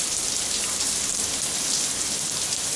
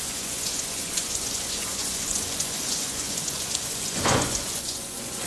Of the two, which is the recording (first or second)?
first